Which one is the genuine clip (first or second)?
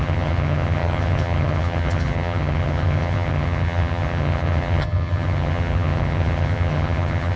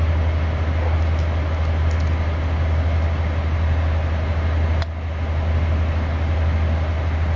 second